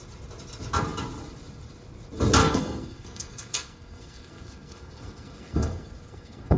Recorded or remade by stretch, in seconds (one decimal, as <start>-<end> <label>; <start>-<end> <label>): 0.0-2.4 recorded; 2.4-6.6 remade